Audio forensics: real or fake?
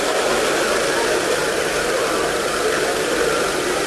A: real